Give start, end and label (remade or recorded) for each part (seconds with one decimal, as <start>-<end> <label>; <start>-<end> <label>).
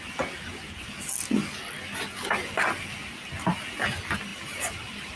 0.0-4.3 recorded; 4.3-5.2 remade